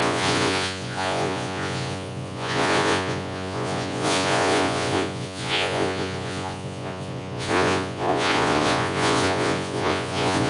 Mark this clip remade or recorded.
remade